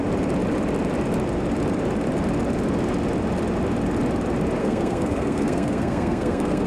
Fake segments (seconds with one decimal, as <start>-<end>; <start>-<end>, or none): 4.6-6.7